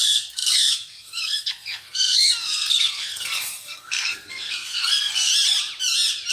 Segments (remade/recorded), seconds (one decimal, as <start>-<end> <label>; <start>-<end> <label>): 0.0-5.3 remade; 5.3-6.3 recorded